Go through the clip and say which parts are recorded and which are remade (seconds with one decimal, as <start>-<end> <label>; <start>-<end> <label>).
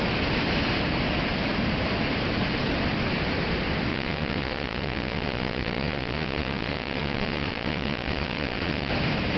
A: 0.0-3.9 recorded; 3.9-8.9 remade; 8.9-9.4 recorded